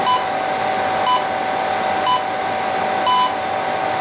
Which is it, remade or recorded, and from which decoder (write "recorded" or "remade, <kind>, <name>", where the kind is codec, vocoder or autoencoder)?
recorded